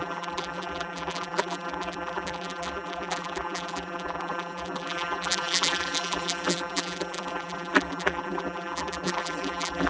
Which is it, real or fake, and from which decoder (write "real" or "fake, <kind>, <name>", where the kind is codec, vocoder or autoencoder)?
fake, vocoder, BigVGAN v2